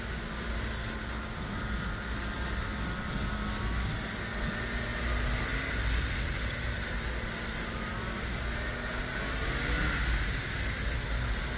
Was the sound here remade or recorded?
recorded